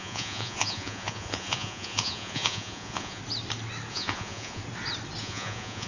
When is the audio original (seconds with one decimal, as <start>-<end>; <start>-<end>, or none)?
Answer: 3.2-3.9; 4.6-5.2